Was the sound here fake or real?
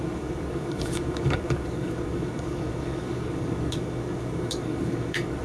fake